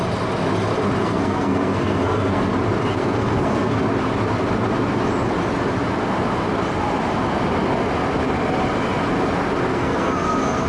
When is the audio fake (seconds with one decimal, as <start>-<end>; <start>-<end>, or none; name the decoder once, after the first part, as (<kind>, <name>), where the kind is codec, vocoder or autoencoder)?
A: 1.0-2.5 (codec, SNAC); 2.9-3.8; 9.7-10.7